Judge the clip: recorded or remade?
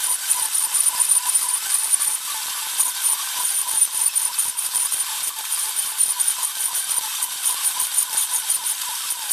remade